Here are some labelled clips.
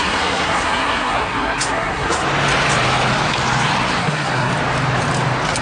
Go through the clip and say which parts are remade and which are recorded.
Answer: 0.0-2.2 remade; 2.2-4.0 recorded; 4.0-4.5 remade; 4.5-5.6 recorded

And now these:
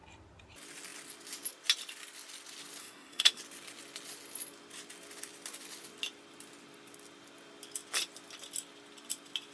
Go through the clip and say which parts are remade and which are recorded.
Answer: 0.0-2.8 recorded; 2.8-3.4 remade; 3.4-9.5 recorded

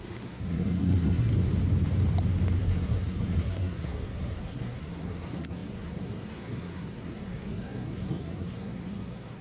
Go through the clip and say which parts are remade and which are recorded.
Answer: 0.0-1.3 remade; 1.3-2.6 recorded; 2.6-9.4 remade